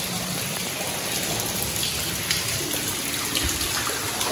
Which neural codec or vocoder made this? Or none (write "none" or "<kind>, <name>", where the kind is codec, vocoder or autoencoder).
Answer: none